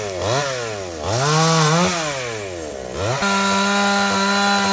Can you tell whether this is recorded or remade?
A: recorded